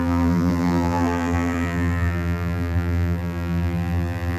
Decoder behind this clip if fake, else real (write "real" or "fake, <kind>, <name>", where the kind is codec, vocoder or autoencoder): fake, vocoder, BigVGAN v2